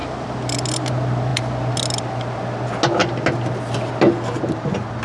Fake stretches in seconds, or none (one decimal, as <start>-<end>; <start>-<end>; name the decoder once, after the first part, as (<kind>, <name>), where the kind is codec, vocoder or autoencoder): none